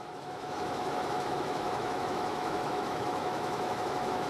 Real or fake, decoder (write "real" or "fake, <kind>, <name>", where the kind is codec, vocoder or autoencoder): fake, autoencoder, DAC-VAE